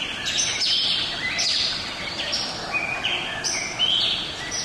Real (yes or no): yes